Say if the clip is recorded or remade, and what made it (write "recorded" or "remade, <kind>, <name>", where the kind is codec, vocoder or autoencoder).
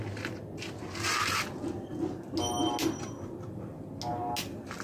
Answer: recorded